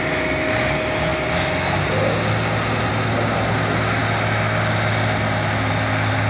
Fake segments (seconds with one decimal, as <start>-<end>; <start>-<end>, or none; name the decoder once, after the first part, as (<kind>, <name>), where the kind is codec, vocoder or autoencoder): none